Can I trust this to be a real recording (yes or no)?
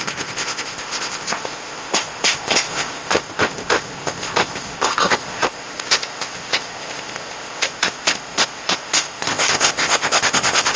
no